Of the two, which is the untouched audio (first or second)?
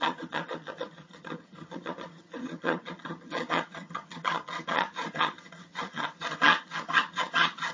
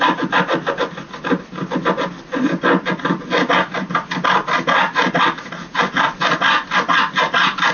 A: second